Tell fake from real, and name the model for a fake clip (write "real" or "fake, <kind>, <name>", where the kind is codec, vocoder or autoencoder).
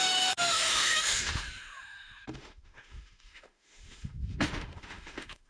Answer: fake, autoencoder, DAC-VAE